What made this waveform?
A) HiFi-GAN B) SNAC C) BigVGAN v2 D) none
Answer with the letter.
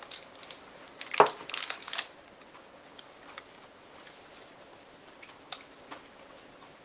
D